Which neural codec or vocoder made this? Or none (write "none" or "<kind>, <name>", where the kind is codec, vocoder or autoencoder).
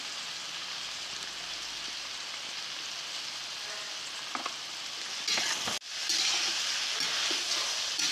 none